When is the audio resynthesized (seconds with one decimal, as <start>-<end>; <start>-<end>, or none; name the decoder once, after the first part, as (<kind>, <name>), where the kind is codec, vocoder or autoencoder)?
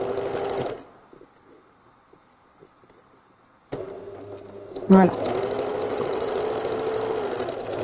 5.9-6.4 (vocoder, WaveNeXt)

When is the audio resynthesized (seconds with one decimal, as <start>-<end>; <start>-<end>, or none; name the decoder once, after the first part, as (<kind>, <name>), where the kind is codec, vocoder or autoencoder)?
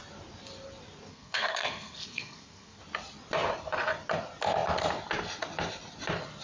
1.1-2.8 (codec, SNAC)